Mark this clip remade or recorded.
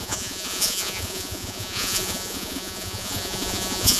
remade